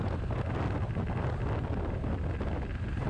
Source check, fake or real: real